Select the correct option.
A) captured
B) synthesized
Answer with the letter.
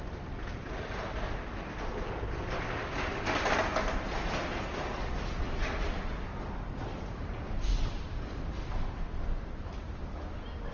A